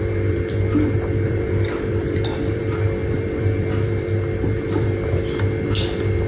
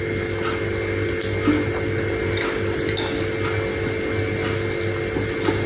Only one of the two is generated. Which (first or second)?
first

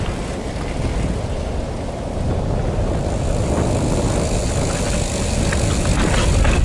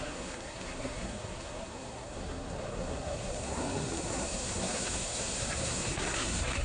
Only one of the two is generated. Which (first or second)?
second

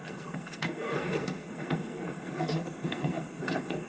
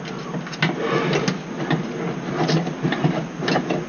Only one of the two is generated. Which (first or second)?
first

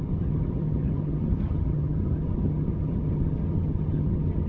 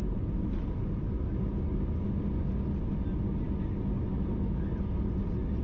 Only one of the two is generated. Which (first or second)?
first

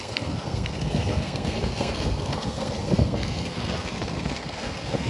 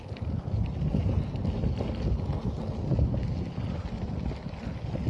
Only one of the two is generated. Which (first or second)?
first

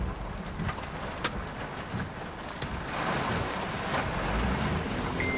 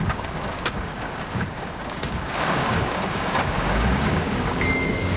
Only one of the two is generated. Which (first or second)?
second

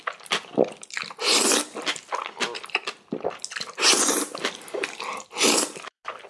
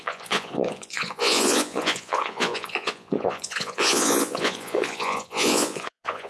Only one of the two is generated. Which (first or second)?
second